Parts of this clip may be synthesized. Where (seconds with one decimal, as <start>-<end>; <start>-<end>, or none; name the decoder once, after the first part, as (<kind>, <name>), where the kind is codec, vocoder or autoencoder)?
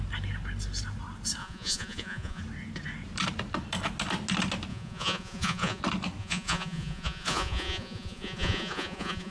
1.4-2.4 (vocoder, Vocos); 4.7-5.8; 6.2-9.3